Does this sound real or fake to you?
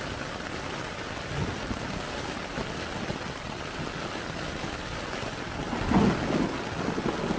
real